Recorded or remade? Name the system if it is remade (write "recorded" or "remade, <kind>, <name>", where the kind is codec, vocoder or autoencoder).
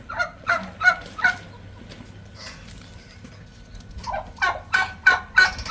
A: recorded